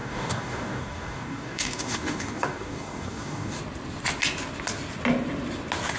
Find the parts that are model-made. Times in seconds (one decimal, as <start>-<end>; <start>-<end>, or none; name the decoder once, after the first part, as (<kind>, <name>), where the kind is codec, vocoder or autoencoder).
0.0-3.6 (codec, DAC)